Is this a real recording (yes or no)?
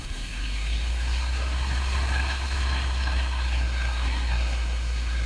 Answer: no